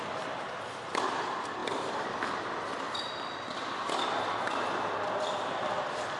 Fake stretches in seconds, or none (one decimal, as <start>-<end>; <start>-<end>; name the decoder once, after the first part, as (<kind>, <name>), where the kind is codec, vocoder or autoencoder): none